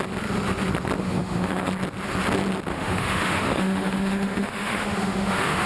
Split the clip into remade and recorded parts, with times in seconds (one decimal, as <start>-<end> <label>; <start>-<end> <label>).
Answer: 0.0-1.0 recorded; 1.0-1.7 remade; 1.7-2.7 recorded; 2.7-5.7 remade